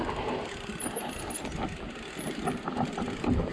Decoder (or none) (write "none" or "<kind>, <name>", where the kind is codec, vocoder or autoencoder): none